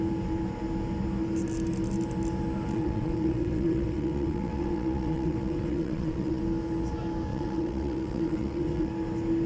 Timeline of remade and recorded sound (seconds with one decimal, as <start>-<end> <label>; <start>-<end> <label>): 0.0-2.7 recorded; 2.7-6.4 remade; 6.4-7.3 recorded; 7.3-8.9 remade; 8.9-9.5 recorded